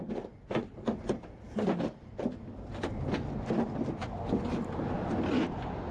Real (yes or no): yes